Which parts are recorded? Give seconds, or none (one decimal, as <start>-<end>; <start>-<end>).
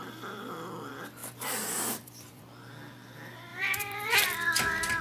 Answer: 0.0-1.2; 2.4-3.5; 4.1-5.0